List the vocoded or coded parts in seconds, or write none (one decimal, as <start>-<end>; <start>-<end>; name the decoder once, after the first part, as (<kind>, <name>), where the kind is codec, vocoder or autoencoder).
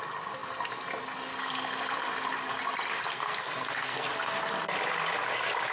3.1-4.1 (codec, SNAC)